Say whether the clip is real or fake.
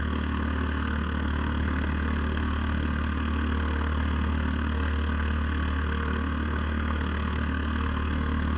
fake